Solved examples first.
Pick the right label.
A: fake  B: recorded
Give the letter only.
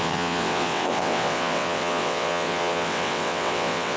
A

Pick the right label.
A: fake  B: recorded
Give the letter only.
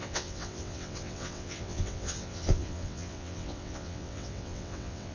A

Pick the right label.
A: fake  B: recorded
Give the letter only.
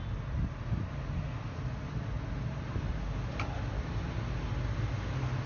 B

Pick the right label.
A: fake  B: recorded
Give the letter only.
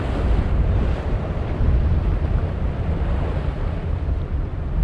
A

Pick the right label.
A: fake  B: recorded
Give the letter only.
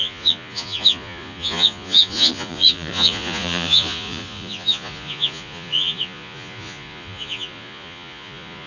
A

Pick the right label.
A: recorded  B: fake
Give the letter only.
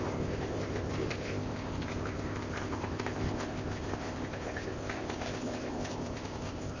B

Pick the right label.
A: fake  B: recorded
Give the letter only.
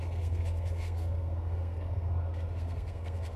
A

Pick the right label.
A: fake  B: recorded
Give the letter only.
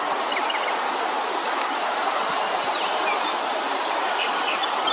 B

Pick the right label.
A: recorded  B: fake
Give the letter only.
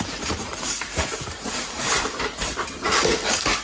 B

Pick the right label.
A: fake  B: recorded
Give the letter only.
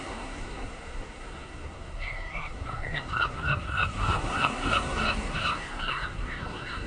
A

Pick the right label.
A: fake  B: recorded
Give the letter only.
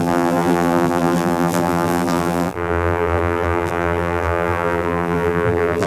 A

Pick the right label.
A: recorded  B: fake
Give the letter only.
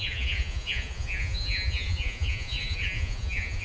B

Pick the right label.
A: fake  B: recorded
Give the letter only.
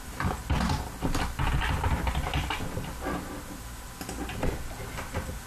B